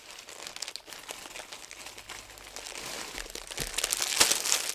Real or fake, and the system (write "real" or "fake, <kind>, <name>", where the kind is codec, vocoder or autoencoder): real